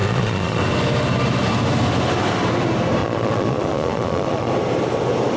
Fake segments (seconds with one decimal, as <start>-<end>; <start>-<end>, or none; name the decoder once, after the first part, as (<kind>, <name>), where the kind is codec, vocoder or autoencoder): 0.0-0.6 (vocoder, Vocos); 3.0-4.5